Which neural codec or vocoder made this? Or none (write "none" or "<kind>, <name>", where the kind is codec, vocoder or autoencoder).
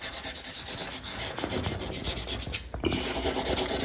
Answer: none